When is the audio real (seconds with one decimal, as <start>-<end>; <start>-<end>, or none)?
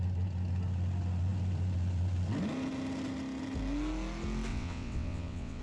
0.0-4.5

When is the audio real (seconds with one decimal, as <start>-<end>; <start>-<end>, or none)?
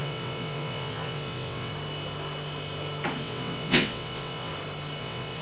1.7-3.2; 4.5-5.0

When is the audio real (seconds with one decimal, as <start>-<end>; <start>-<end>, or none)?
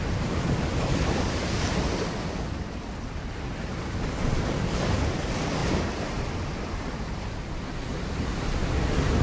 0.0-9.2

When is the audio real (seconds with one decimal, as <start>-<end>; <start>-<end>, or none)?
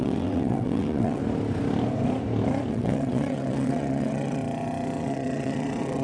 1.2-2.7; 4.4-5.0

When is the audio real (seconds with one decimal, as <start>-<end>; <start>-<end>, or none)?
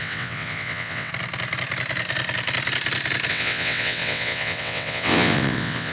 1.1-3.3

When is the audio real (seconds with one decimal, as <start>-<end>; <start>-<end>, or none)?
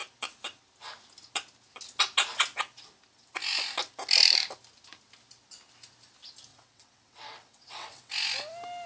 0.0-6.5; 8.1-8.9